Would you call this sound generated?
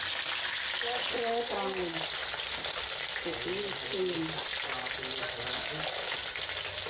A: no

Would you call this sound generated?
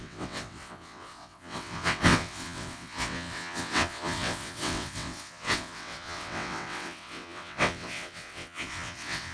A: yes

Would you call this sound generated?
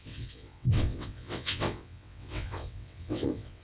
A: yes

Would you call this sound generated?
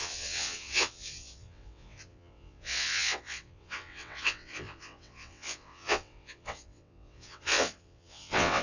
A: yes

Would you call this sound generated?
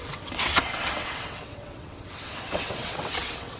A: yes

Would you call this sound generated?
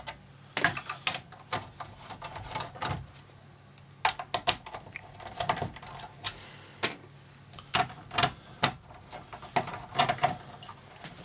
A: no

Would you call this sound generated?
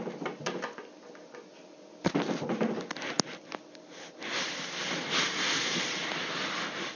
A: no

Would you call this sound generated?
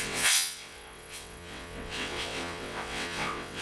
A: yes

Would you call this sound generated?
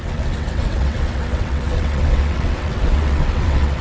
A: yes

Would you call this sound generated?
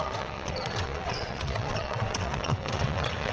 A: yes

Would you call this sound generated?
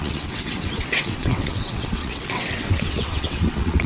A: yes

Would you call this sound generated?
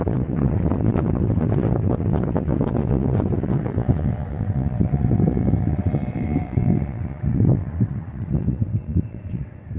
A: yes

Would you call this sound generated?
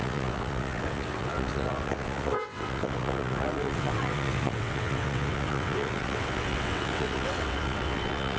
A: yes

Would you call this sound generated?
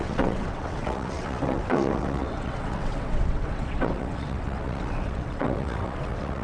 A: yes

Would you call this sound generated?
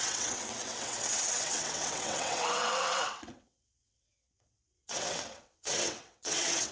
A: yes